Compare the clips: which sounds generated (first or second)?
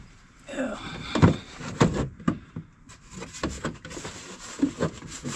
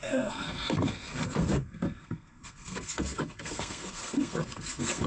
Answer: second